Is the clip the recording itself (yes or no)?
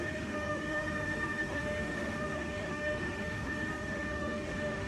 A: no